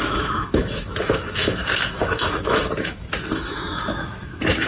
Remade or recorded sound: remade